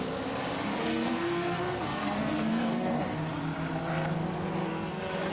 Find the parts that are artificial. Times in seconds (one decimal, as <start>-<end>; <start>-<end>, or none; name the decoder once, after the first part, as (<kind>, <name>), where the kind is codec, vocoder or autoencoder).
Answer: 0.7-3.0 (codec, SNAC); 4.6-5.3